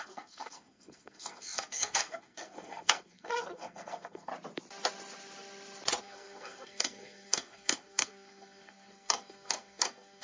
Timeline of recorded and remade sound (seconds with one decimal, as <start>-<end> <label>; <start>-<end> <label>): 0.0-4.3 remade; 4.3-6.0 recorded; 6.0-10.2 remade